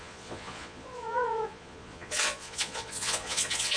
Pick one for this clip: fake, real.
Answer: fake